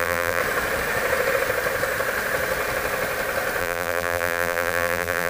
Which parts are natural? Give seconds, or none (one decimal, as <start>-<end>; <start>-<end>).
0.4-3.6